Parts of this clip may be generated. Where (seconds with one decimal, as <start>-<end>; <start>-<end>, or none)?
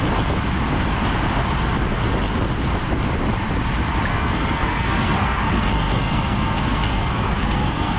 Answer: 4.1-8.0